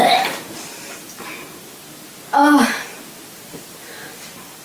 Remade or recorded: recorded